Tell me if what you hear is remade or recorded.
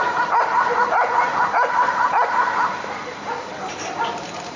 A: remade